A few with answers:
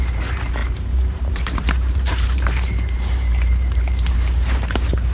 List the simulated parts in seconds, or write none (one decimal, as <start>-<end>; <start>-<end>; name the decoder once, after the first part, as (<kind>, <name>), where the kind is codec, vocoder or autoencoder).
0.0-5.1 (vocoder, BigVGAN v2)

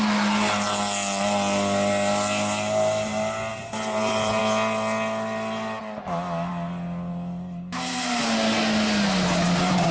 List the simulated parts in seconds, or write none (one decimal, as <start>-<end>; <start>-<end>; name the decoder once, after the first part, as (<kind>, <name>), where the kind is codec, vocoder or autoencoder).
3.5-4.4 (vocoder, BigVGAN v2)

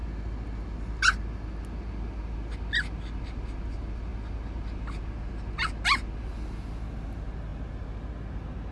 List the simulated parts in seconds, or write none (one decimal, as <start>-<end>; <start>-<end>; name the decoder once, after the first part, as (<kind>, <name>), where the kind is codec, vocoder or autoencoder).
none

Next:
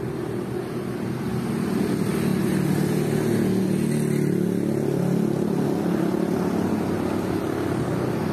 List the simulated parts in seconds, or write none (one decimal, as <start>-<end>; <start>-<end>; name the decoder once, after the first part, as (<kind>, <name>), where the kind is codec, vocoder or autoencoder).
none

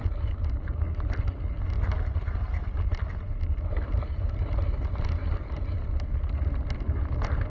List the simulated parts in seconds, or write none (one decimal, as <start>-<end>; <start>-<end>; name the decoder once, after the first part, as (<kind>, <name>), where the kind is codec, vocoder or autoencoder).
none